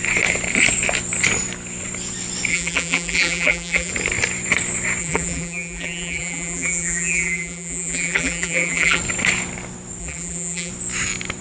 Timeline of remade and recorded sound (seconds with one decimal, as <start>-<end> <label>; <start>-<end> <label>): 0.0-2.5 recorded; 2.5-3.9 remade; 3.9-5.0 recorded; 5.0-9.0 remade; 9.0-10.0 recorded; 10.0-10.7 remade; 10.7-11.4 recorded